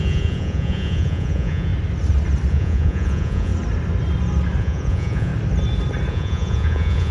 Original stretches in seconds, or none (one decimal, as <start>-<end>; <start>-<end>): 1.7-2.5; 3.5-4.6; 5.3-6.1